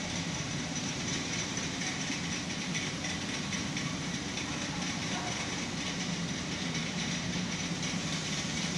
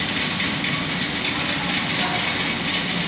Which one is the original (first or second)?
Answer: second